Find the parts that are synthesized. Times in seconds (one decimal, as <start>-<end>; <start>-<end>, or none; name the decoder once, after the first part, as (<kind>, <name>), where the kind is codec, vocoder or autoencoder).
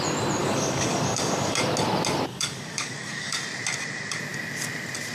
0.4-1.6 (codec, DAC); 2.3-3.4